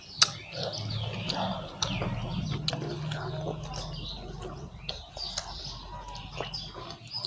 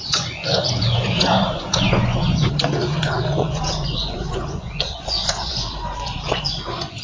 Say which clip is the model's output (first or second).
second